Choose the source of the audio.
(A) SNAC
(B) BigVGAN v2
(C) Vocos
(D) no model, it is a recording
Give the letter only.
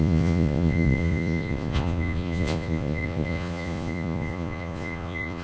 C